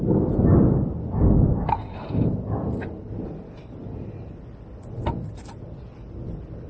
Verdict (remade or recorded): recorded